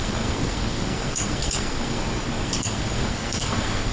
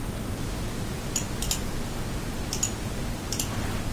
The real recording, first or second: second